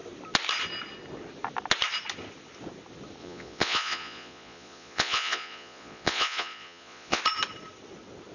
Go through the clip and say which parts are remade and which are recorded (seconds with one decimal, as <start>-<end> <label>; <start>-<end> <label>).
0.0-3.2 recorded; 3.2-7.2 remade; 7.2-8.3 recorded

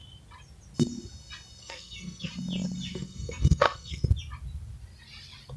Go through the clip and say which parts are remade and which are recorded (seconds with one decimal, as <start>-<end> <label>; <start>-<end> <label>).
0.0-1.6 recorded; 1.6-2.3 remade; 2.3-2.9 recorded; 2.9-4.1 remade; 4.1-5.6 recorded